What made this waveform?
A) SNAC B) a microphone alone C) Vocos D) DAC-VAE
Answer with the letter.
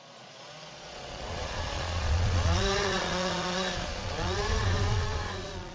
C